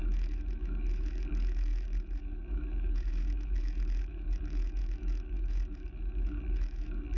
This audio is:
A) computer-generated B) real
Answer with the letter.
A